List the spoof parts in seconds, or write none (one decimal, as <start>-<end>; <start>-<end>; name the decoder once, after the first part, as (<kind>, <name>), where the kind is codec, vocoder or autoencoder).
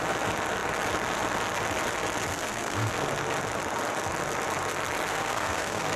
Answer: 2.3-2.9 (codec, SNAC); 5.1-6.0